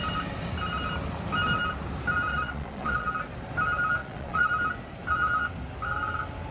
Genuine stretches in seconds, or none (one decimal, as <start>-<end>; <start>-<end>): 0.0-2.3; 3.1-4.0; 4.5-6.5